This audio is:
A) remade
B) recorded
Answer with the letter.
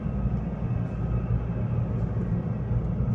B